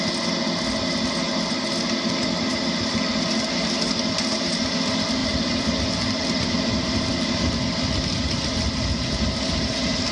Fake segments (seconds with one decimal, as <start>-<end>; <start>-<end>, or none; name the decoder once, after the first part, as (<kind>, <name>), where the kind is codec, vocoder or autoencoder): none